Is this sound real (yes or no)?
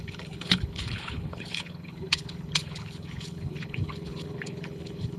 no